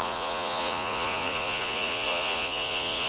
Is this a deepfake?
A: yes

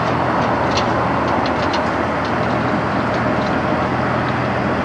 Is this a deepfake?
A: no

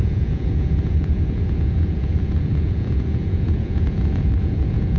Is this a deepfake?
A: yes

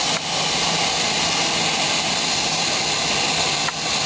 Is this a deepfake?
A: no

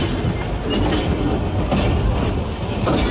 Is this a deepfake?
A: no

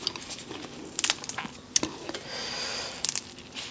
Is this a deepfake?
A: no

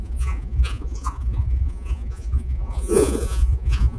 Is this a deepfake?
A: yes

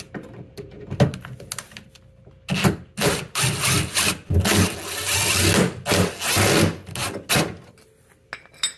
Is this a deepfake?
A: no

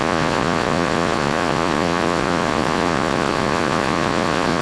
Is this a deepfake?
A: yes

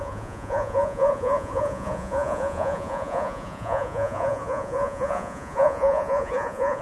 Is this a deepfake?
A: yes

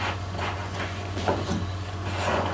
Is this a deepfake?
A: yes